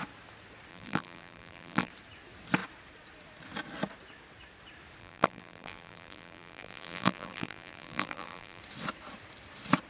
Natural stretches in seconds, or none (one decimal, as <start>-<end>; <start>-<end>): 0.0-0.7; 1.9-5.0; 8.6-9.9